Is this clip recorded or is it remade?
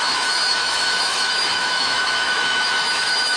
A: remade